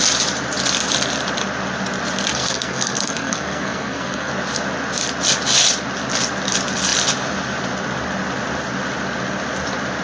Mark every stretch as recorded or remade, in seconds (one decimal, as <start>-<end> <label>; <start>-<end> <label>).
0.0-2.3 recorded; 2.3-4.3 remade; 4.3-10.0 recorded